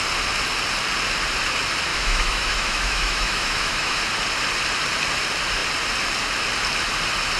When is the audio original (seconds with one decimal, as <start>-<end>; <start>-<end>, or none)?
0.0-1.9; 4.0-7.4